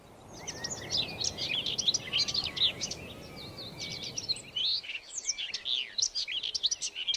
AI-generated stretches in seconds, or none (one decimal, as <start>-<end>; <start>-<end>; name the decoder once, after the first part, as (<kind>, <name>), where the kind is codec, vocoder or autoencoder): 2.4-3.0 (autoencoder, DAC-VAE); 4.6-5.5